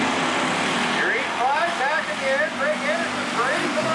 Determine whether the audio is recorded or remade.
recorded